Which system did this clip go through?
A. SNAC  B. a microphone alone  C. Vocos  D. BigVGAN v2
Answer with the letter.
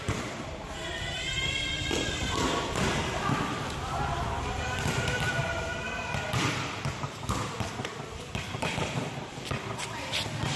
D